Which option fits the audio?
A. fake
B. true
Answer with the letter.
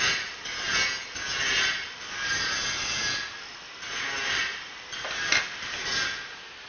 B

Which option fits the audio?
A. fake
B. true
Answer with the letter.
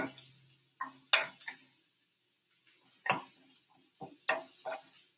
B